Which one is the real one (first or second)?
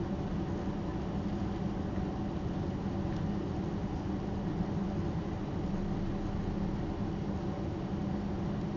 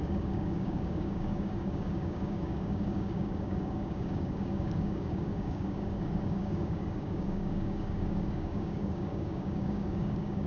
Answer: first